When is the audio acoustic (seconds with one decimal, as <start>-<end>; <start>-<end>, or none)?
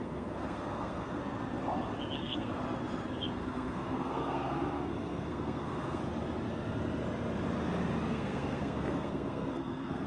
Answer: 1.2-2.2; 2.6-3.3; 6.0-8.1